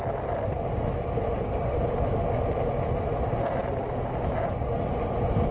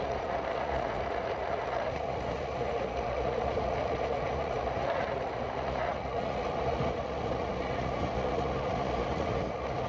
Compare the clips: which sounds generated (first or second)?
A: second